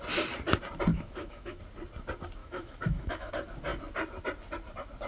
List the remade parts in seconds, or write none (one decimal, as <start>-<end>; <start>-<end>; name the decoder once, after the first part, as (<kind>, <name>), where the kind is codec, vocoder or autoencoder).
0.9-1.6 (autoencoder, DAC-VAE); 2.4-3.3